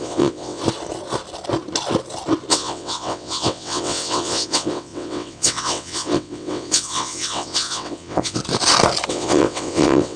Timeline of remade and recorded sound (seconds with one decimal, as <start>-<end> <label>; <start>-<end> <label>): 0.0-0.6 remade; 0.6-2.5 recorded; 2.5-8.4 remade; 8.4-9.1 recorded; 9.1-10.2 remade